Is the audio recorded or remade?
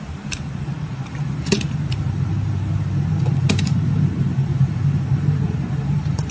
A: remade